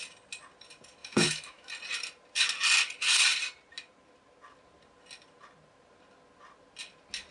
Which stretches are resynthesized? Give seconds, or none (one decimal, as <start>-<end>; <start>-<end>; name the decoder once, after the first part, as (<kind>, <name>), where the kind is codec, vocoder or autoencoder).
1.0-1.7 (autoencoder, DAC-VAE)